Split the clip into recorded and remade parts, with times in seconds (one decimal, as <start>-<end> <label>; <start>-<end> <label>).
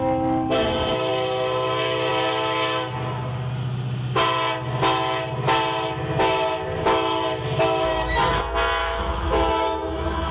0.0-7.9 recorded; 7.9-8.4 remade; 8.4-8.8 recorded; 8.8-10.3 remade